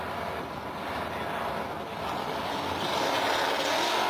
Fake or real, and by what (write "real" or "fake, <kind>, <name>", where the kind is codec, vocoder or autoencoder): real